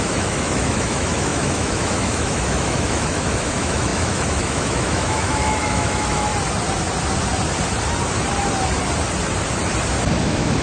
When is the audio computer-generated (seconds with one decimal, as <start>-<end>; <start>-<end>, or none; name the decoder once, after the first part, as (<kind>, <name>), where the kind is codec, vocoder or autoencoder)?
0.0-6.3 (autoencoder, DAC-VAE); 10.2-10.6